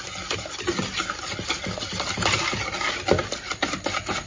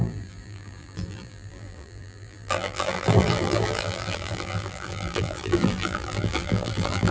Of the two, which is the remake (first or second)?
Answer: second